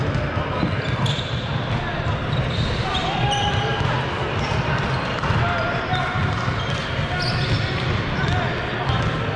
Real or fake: real